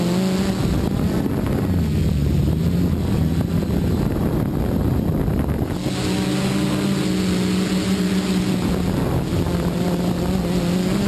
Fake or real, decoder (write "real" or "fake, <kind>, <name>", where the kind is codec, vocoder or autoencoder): real